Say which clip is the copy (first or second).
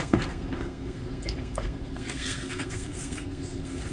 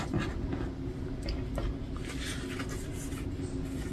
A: first